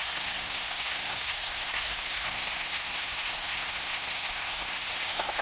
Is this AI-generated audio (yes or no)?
yes